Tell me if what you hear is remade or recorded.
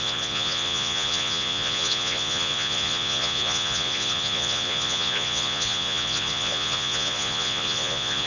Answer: remade